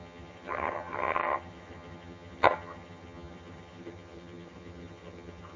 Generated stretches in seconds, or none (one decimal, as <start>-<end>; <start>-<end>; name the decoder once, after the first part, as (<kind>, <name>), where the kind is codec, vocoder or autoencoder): 0.0-5.6 (vocoder, HiFi-GAN)